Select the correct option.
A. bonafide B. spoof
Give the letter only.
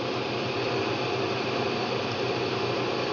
A